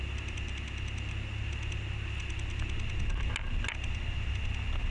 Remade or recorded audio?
recorded